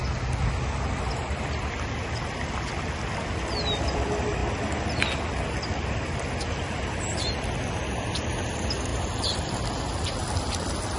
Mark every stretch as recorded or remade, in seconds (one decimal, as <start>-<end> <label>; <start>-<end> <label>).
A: 0.0-11.0 recorded